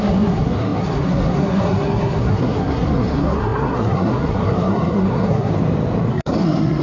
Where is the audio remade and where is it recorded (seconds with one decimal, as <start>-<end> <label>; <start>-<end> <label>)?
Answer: 0.0-5.5 remade; 5.5-6.1 recorded; 6.1-6.8 remade